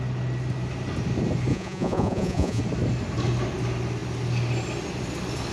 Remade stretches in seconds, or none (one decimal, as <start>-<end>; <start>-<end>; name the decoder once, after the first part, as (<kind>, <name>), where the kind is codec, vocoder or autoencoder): 1.5-2.6 (vocoder, Vocos)